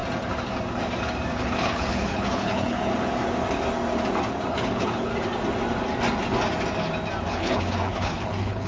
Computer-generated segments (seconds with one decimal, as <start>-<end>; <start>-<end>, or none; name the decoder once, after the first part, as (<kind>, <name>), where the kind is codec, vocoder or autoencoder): 1.4-2.9 (codec, HILCodec); 4.5-5.1; 7.3-8.7